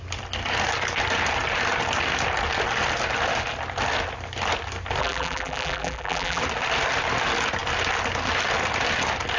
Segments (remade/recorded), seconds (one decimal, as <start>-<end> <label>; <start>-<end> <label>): 0.0-5.0 recorded; 5.0-6.4 remade; 6.4-9.4 recorded